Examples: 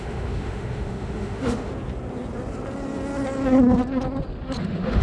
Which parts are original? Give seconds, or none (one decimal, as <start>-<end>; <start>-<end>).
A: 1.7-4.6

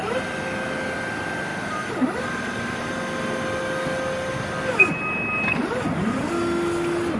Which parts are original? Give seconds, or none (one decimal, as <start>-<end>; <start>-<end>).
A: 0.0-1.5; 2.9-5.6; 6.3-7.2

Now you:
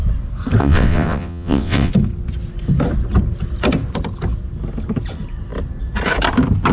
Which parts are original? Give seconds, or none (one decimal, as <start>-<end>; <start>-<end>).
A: 0.0-0.6; 1.9-6.7

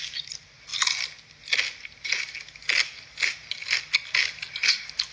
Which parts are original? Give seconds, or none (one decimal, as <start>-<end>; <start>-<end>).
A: 0.0-5.1

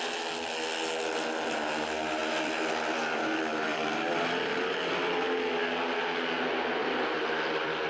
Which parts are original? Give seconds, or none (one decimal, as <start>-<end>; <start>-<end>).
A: 0.0-2.2; 5.0-6.8

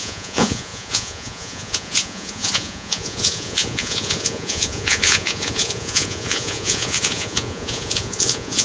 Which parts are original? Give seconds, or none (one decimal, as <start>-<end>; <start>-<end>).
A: none

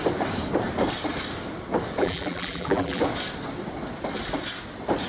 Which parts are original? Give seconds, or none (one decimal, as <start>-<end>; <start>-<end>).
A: 0.0-2.0; 3.0-5.1